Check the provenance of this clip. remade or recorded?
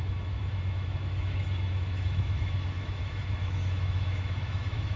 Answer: remade